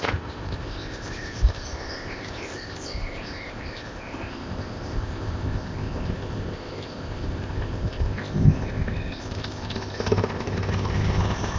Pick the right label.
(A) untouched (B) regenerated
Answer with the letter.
B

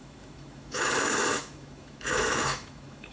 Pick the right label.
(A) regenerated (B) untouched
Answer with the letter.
A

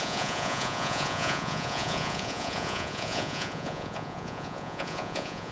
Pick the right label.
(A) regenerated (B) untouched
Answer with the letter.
A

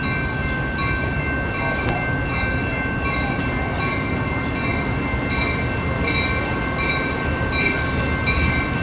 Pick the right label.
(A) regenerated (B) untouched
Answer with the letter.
B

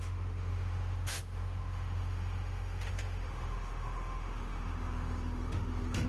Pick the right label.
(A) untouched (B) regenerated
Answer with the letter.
B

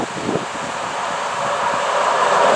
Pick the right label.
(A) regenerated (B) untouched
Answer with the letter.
B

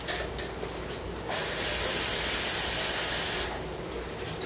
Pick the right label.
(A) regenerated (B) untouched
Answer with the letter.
B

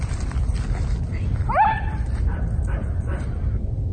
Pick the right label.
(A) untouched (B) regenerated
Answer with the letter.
A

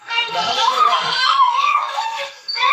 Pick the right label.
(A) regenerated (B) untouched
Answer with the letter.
A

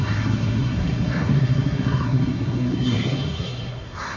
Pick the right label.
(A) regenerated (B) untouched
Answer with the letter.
A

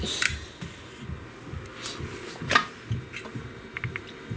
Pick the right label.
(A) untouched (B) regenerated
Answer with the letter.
A